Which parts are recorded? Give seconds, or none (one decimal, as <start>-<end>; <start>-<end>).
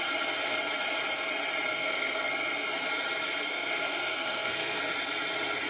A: 0.0-1.7; 2.3-3.5; 4.8-5.7